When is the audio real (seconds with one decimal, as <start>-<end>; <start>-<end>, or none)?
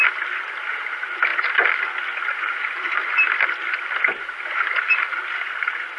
0.0-6.0